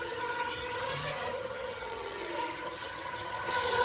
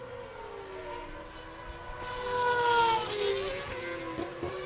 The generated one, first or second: first